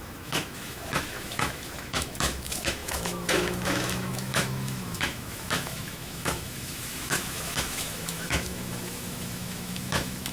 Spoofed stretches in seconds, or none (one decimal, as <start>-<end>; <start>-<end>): 0.0-10.3